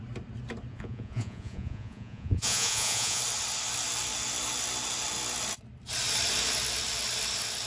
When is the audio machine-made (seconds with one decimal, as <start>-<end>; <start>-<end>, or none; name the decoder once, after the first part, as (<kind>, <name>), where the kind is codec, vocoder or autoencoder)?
0.7-3.2 (vocoder, Vocos)